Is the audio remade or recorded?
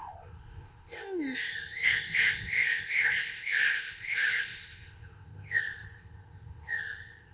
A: remade